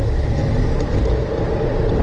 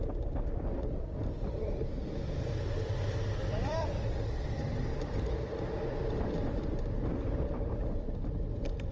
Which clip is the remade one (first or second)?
second